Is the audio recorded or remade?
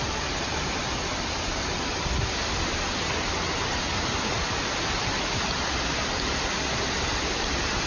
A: remade